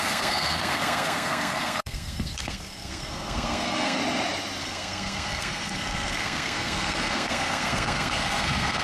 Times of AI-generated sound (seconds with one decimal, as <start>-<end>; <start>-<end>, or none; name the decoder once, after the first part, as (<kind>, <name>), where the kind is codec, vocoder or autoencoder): 0.0-4.0 (codec, SNAC); 4.6-8.8